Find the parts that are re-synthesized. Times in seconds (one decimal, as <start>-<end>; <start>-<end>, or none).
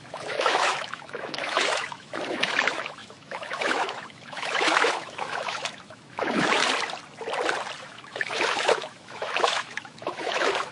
0.0-6.6; 7.8-10.7